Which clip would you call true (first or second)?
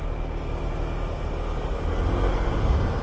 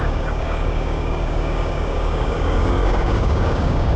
first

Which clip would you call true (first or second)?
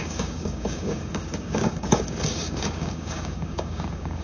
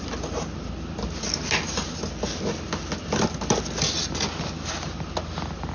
second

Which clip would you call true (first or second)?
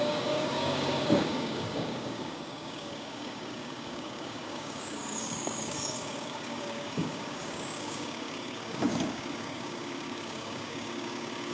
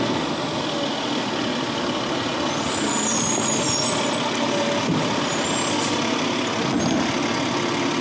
second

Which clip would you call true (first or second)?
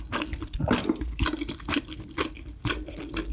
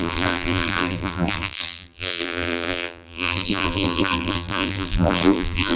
first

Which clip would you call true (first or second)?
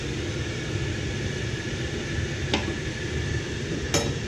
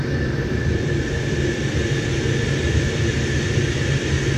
first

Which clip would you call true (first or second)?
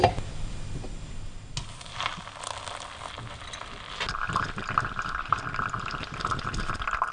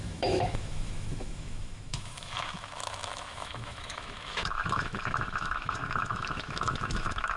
first